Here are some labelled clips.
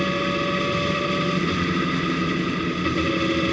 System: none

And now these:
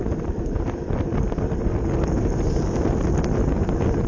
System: none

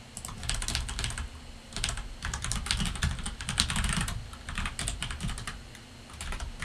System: none